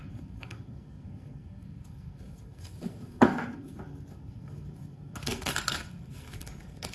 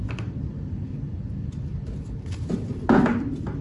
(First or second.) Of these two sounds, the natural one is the second